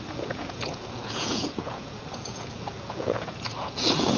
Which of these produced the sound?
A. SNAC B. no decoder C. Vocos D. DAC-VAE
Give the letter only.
C